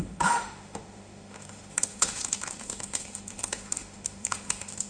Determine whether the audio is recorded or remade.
remade